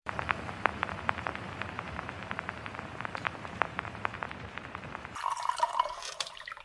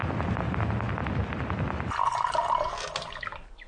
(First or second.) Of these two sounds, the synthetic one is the first